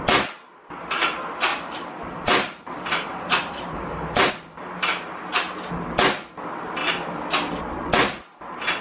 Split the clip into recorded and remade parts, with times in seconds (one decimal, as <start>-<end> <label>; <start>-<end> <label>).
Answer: 0.0-1.5 recorded; 1.5-4.3 remade; 4.3-8.8 recorded